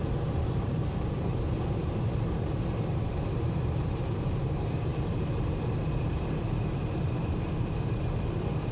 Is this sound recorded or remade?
remade